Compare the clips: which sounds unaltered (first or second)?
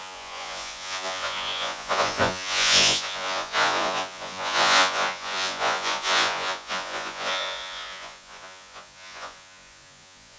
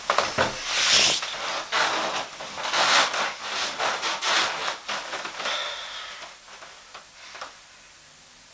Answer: second